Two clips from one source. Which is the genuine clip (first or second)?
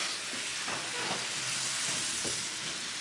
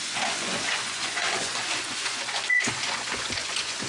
first